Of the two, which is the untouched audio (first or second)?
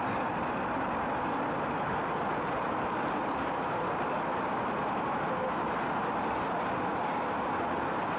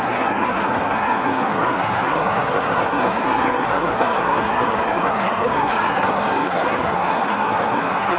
first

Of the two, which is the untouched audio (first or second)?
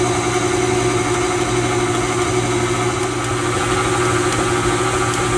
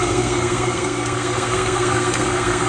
first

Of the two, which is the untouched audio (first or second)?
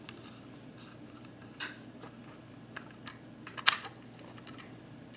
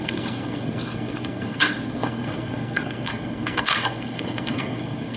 first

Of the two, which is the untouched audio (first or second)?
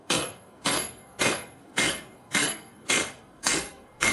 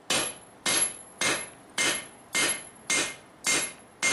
second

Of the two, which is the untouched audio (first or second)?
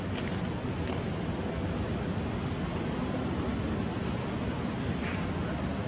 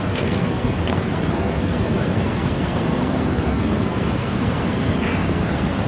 first